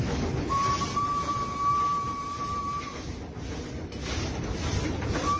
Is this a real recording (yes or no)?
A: yes